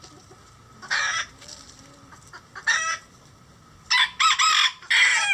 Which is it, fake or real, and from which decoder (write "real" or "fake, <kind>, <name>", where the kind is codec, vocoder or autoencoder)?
real